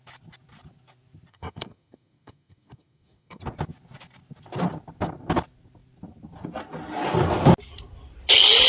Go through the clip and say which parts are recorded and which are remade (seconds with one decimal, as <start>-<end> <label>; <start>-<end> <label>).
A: 0.0-1.3 recorded; 1.3-3.4 remade; 3.4-8.7 recorded